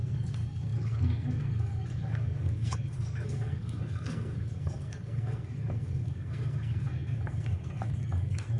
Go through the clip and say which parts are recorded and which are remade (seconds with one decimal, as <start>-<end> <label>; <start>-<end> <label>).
0.0-8.6 remade